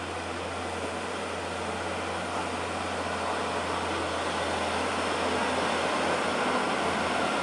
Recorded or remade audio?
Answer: recorded